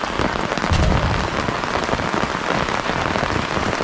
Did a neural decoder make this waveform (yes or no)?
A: no